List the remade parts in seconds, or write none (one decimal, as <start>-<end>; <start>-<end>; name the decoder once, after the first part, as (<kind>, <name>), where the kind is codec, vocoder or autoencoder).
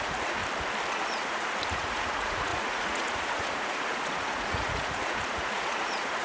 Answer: 0.0-0.4 (vocoder, Vocos); 0.9-6.2